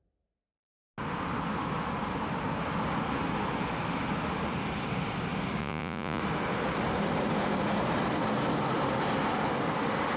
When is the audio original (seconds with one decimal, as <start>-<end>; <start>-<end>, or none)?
0.0-5.6; 6.2-10.2